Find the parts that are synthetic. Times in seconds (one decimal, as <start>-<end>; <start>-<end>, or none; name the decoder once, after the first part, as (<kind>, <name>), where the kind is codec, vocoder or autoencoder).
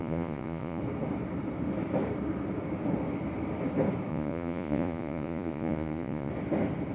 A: 0.0-0.8 (vocoder, Vocos); 4.1-6.3